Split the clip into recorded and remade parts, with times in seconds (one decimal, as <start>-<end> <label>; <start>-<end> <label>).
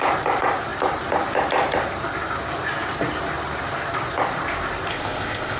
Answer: 0.0-4.9 recorded; 4.9-5.6 remade